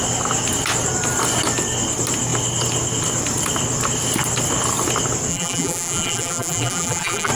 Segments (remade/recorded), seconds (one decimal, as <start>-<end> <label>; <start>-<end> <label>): 0.0-5.3 recorded; 5.3-7.3 remade